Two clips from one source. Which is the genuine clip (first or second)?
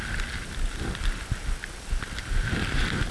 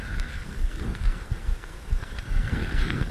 first